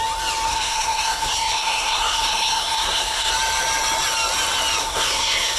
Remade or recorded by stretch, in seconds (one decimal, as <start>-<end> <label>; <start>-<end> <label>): 0.0-0.5 recorded; 0.5-3.3 remade; 3.3-4.8 recorded; 4.8-5.6 remade